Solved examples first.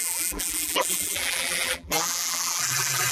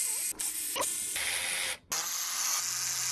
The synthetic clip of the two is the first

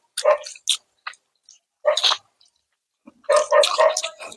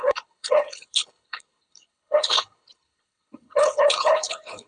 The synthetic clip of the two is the second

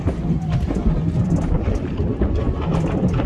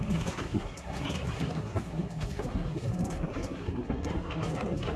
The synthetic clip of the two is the second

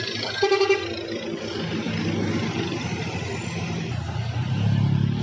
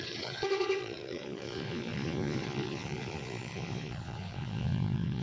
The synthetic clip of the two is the second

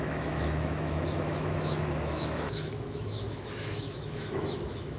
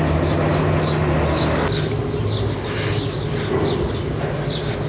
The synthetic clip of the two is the first